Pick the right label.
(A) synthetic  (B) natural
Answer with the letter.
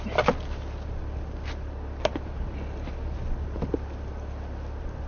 B